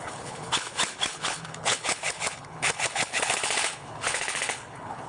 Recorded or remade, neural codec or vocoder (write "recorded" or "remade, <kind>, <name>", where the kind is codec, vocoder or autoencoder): remade, codec, HILCodec